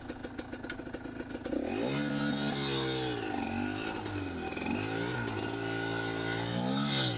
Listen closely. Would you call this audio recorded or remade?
recorded